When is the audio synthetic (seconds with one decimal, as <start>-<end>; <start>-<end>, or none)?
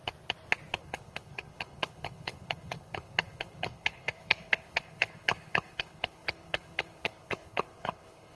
0.8-8.3